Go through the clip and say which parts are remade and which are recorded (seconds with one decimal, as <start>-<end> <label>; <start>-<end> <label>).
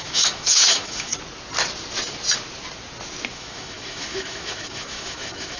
0.0-1.1 remade; 1.1-3.3 recorded; 3.3-5.6 remade